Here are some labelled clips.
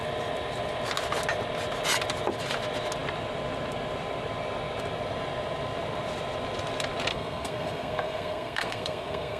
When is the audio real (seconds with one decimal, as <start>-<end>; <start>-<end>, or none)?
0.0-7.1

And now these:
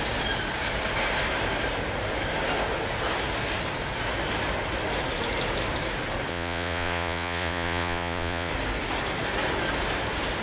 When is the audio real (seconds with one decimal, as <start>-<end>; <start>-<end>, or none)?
0.0-6.3; 8.5-10.4

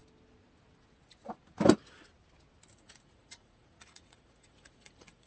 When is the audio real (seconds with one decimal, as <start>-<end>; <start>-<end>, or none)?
0.0-2.7